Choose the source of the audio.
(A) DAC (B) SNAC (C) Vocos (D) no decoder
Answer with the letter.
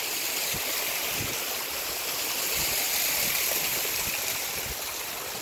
D